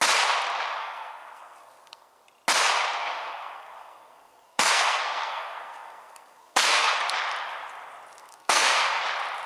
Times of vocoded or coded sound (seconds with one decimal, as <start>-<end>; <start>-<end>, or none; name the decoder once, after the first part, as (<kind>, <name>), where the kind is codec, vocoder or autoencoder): 0.8-2.2 (codec, SNAC); 3.0-7.0; 8.2-9.0

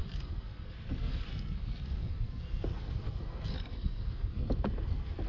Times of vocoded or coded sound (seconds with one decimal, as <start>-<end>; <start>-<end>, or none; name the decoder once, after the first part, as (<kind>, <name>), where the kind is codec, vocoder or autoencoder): 0.0-5.3 (codec, SNAC)

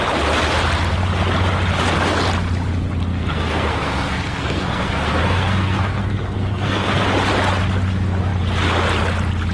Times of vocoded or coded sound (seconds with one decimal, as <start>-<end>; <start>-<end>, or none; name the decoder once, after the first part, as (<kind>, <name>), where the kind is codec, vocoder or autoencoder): 3.1-7.0 (codec, SNAC)

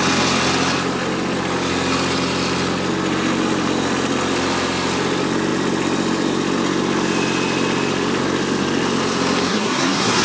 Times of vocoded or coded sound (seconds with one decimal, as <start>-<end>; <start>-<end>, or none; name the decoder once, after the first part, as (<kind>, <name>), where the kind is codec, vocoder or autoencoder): 9.5-10.2 (codec, SNAC)

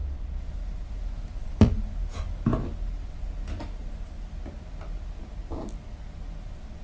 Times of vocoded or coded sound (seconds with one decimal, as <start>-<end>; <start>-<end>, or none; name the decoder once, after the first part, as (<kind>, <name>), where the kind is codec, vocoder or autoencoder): none

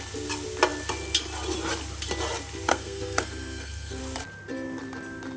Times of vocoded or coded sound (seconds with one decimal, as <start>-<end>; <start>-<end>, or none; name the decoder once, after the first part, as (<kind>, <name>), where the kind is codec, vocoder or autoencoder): 2.7-4.0 (codec, SNAC)

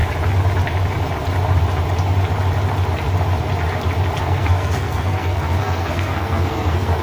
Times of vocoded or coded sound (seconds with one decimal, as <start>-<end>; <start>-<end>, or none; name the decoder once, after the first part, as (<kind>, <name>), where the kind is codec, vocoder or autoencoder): 4.2-7.0 (codec, SNAC)